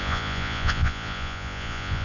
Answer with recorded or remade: remade